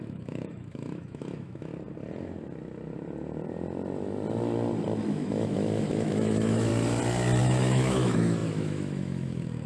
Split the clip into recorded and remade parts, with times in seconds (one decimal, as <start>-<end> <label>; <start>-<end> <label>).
0.0-1.7 remade; 1.7-5.1 recorded; 5.1-6.7 remade; 6.7-7.4 recorded; 7.4-9.7 remade